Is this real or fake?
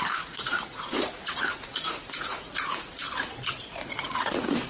fake